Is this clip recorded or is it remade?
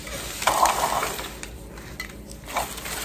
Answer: recorded